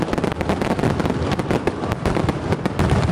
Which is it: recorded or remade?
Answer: remade